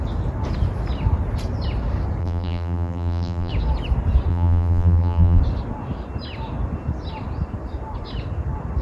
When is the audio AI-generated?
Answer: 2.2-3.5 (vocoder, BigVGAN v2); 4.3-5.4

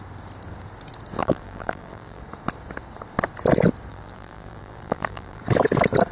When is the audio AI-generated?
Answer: 1.2-2.2 (vocoder, BigVGAN v2); 3.9-5.4

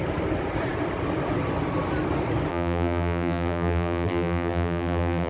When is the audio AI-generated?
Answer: 2.5-5.3 (vocoder, BigVGAN v2)

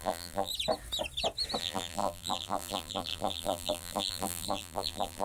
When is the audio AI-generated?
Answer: 0.0-0.5 (vocoder, BigVGAN v2); 1.6-5.2

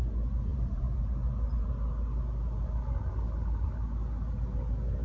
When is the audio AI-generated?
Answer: 0.5-1.0 (vocoder, BigVGAN v2)

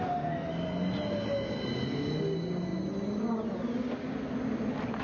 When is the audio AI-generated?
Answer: none